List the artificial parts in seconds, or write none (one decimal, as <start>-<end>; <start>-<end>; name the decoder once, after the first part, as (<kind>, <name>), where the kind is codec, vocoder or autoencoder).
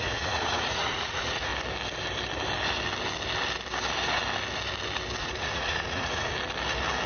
0.0-1.5 (vocoder, Vocos); 5.2-6.3